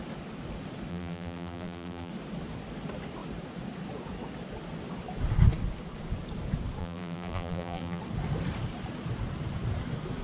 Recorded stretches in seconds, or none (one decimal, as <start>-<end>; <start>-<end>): 0.0-0.9; 2.1-6.8; 8.0-10.2